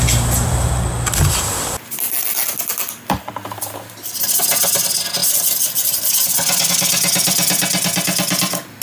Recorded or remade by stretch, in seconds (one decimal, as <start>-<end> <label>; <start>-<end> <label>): 0.0-8.8 recorded